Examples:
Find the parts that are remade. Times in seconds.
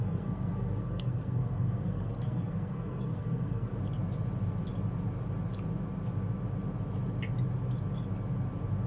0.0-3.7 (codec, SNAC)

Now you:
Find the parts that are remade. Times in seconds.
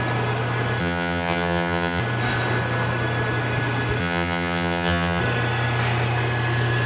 0.8-2.0 (vocoder, HiFi-GAN); 4.0-5.2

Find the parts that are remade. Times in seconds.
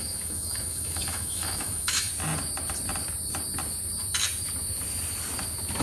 0.0-2.1 (autoencoder, DAC-VAE)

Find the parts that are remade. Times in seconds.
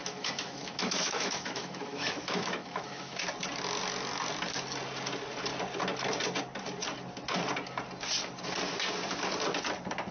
0.0-3.2 (autoencoder, DAC-VAE)